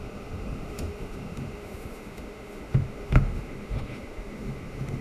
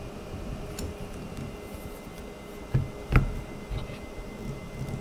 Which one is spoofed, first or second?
first